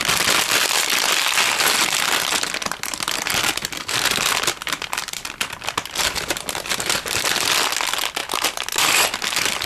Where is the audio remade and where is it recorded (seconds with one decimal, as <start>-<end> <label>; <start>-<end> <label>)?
0.0-9.7 recorded